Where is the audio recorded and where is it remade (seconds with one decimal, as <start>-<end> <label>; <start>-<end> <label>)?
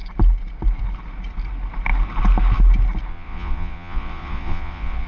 0.0-3.1 recorded; 3.1-5.1 remade